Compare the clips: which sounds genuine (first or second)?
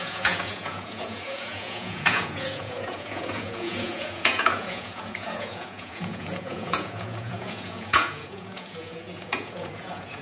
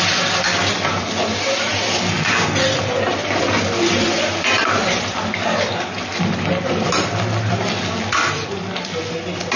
second